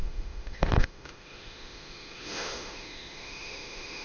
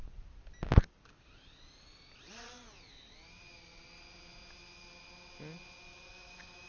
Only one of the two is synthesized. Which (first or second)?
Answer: first